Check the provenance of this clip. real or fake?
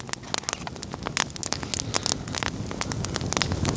real